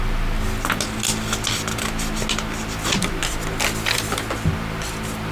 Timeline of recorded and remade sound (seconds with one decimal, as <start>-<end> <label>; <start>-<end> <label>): 0.0-5.3 recorded